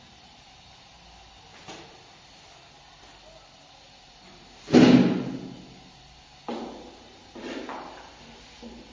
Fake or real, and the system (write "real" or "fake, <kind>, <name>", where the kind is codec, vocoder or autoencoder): real